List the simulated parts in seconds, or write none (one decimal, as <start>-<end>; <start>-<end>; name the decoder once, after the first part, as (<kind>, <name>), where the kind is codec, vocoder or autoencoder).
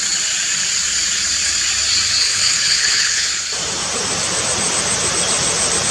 2.2-3.5 (codec, HILCodec)